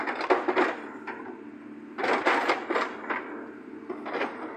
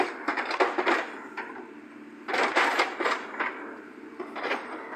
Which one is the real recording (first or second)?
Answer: first